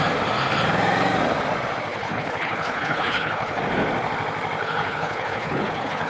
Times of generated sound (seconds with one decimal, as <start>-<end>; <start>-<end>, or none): 1.9-3.6; 4.6-6.1